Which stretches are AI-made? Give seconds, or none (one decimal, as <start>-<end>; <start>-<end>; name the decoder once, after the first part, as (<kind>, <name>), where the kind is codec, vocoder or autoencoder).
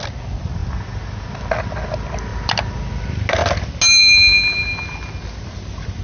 none